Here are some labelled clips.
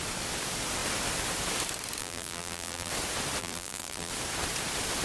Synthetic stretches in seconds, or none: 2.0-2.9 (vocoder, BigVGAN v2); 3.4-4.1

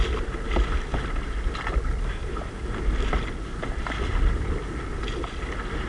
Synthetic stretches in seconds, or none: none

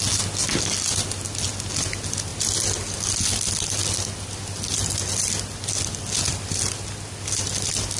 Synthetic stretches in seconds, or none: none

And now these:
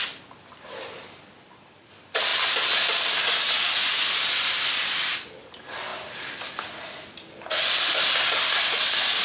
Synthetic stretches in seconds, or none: none

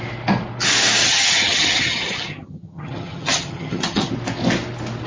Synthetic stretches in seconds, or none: 1.0-4.1 (vocoder, HiFi-GAN)

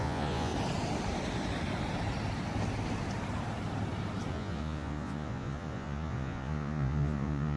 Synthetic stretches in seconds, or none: 0.0-0.5 (vocoder, Vocos); 4.3-7.6

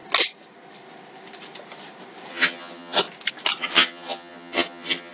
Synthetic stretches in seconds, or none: 2.3-3.0 (vocoder, HiFi-GAN); 3.6-5.1

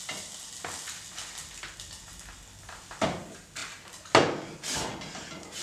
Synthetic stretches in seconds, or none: none